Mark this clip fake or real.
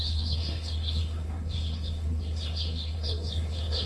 fake